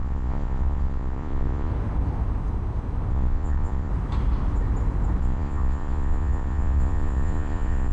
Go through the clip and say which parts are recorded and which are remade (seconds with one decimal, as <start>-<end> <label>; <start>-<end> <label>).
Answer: 0.0-1.7 remade; 1.7-3.1 recorded; 3.1-3.9 remade; 3.9-5.2 recorded; 5.2-7.9 remade